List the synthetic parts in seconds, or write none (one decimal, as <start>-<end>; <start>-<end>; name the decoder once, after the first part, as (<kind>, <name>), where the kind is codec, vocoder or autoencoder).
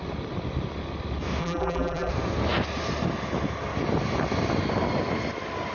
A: 1.4-2.1 (vocoder, BigVGAN v2)